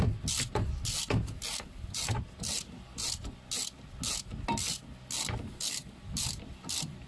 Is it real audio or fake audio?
real